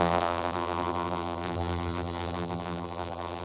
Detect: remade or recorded remade